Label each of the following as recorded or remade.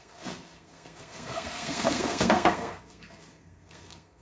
remade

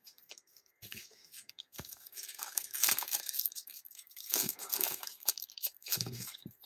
remade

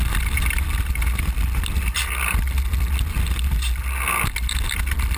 recorded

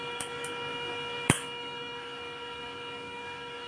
remade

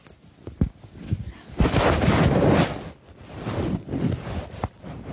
recorded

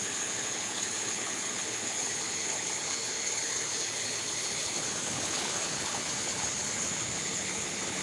remade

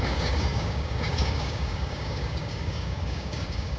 remade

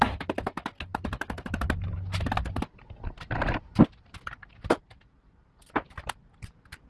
recorded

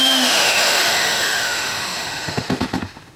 remade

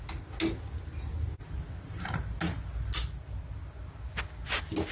recorded